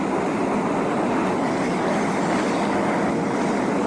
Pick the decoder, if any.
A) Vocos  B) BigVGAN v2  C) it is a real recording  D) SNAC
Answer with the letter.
C